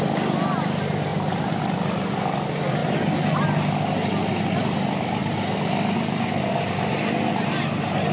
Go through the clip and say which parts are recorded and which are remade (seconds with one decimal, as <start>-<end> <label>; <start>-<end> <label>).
0.0-1.1 recorded; 1.1-1.6 remade; 1.6-8.1 recorded